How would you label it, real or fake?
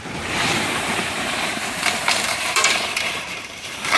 fake